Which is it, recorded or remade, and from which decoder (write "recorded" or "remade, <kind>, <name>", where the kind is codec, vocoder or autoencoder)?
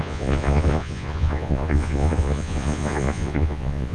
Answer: remade, vocoder, Vocos